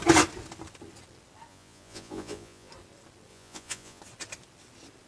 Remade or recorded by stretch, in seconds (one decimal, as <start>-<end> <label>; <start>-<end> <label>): 0.0-1.5 recorded; 1.5-2.7 remade; 2.7-3.3 recorded; 3.3-4.0 remade; 4.0-5.1 recorded